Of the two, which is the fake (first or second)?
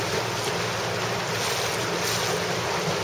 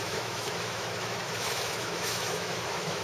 second